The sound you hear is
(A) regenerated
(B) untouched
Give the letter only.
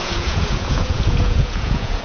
A